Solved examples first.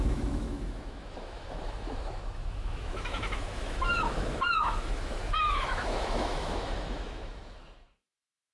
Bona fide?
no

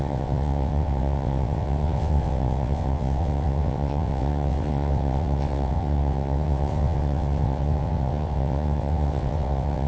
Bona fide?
no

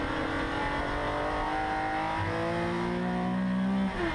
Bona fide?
yes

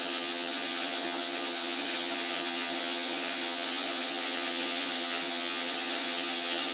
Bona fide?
no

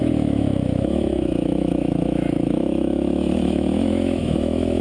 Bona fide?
no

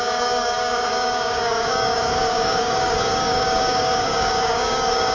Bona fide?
no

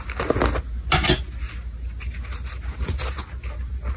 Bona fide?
yes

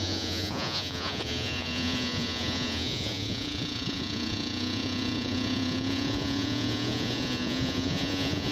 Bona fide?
no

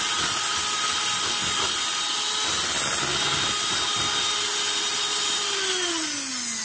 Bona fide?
yes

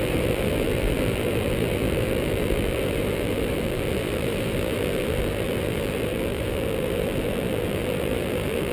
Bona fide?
no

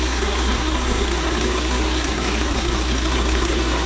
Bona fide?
no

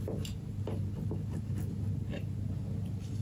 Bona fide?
yes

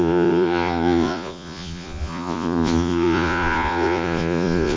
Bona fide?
no